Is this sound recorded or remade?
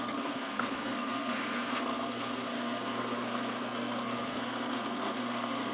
remade